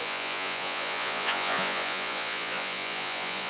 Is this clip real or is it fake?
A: fake